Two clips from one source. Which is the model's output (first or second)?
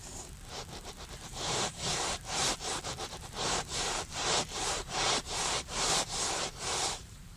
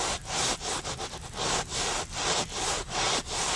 first